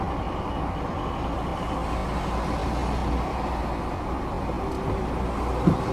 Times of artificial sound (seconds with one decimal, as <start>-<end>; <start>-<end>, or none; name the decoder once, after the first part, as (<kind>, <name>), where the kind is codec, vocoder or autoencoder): none